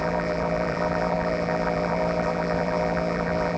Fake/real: fake